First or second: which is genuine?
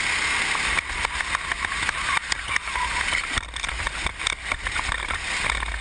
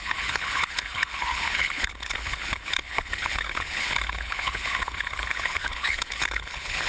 first